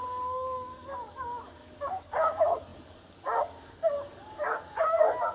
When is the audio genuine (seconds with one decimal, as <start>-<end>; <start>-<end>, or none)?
none

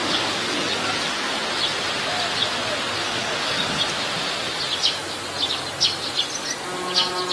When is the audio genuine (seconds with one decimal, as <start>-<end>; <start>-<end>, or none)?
1.3-3.0; 3.8-7.3

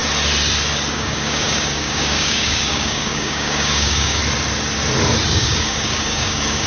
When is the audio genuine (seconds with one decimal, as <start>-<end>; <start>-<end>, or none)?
0.0-0.9; 4.2-5.3

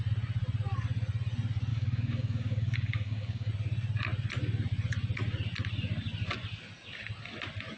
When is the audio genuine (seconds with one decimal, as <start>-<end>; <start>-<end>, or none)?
0.0-1.7; 3.5-7.8

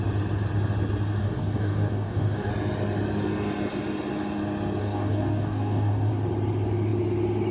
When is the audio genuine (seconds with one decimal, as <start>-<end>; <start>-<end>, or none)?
0.0-1.2; 2.5-4.8; 6.1-7.5